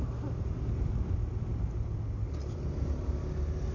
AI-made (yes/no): no